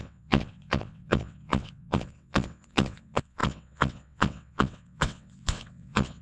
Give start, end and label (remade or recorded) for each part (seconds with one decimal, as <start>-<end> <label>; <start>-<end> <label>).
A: 0.0-6.2 remade